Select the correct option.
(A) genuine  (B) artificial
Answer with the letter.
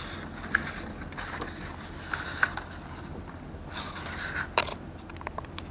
A